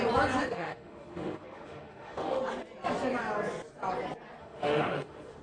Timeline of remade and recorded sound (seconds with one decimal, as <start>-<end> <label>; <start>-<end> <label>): 0.0-0.4 recorded; 0.4-2.4 remade; 2.4-4.4 recorded; 4.4-5.4 remade